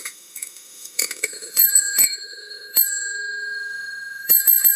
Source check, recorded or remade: remade